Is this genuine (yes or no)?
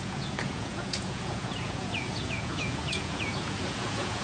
no